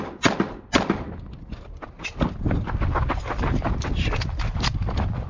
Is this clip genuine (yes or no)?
yes